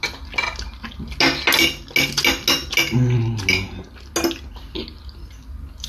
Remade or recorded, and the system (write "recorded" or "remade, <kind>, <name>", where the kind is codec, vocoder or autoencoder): recorded